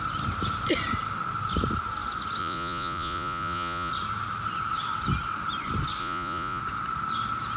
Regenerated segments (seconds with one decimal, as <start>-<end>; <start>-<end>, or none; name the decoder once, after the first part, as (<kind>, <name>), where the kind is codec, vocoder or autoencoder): 2.4-3.9 (vocoder, Vocos); 6.0-6.6